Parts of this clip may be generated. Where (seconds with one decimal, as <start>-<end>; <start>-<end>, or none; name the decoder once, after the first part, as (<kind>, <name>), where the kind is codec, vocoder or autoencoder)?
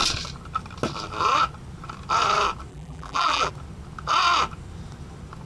2.7-3.5 (vocoder, BigVGAN v2)